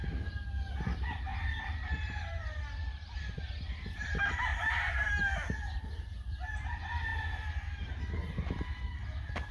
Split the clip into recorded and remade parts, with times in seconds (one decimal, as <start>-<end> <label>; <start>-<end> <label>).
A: 0.0-1.3 recorded; 1.3-2.4 remade; 2.4-4.5 recorded; 4.5-5.1 remade; 5.1-9.5 recorded